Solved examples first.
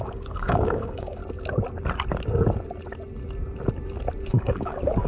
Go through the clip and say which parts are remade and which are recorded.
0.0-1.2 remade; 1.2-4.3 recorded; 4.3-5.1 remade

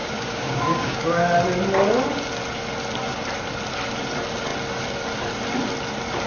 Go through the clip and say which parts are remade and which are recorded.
0.0-1.2 remade; 1.2-6.3 recorded

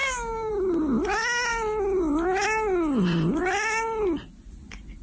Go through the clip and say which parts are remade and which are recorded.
0.0-0.5 remade; 0.5-5.0 recorded

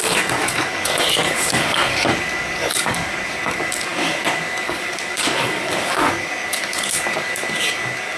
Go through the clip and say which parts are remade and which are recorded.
0.0-8.2 remade